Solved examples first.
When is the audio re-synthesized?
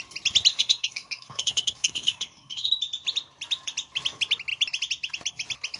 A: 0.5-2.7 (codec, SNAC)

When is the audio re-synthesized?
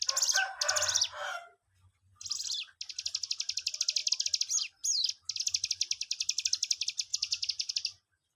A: 7.1-7.7 (vocoder, Vocos)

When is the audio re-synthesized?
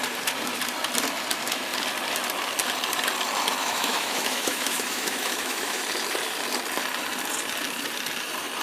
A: 3.6-5.8 (autoencoder, DAC-VAE)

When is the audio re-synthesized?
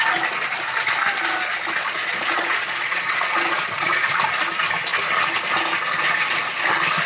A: 1.8-4.2 (vocoder, Vocos)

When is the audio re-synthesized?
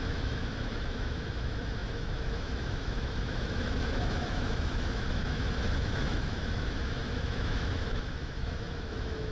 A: 0.0-9.3 (autoencoder, DAC-VAE)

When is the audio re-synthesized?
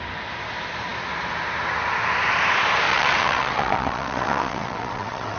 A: 2.9-5.4 (vocoder, WaveNeXt)